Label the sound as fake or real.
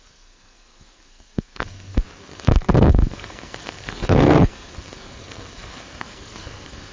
fake